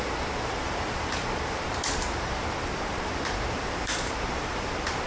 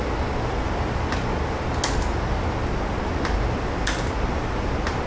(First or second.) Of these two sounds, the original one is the second